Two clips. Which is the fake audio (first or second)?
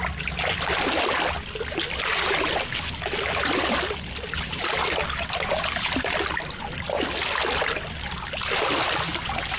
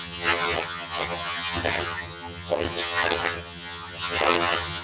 second